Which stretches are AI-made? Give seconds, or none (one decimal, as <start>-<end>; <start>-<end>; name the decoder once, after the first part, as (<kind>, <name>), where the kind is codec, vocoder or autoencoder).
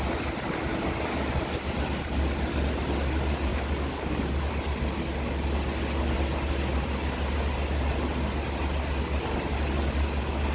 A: 3.5-4.5 (codec, DAC)